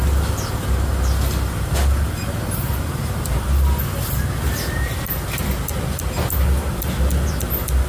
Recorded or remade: recorded